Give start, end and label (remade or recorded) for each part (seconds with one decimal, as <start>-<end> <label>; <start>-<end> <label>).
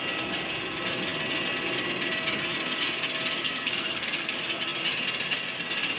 0.0-3.4 recorded; 3.4-4.3 remade; 4.3-6.0 recorded